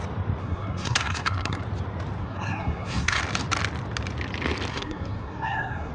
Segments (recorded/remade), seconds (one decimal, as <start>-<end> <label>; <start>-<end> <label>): 0.0-0.4 recorded; 0.4-1.6 remade; 1.6-2.2 recorded; 2.2-3.2 remade; 3.2-4.7 recorded; 4.7-5.9 remade